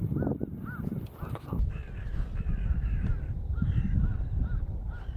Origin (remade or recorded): recorded